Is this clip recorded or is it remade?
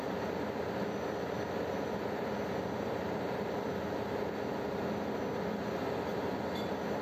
recorded